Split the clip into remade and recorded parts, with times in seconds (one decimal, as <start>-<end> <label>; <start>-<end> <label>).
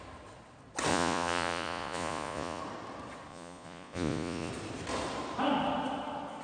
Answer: 0.0-0.9 recorded; 0.9-2.6 remade; 2.6-3.3 recorded; 3.3-4.5 remade; 4.5-6.4 recorded